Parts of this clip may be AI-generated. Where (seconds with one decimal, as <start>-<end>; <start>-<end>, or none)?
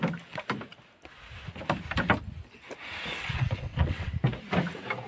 3.2-4.1